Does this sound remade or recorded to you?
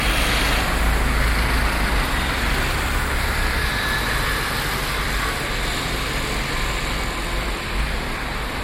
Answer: recorded